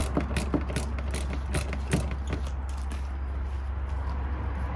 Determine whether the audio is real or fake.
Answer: real